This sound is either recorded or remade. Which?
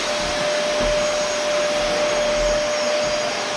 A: recorded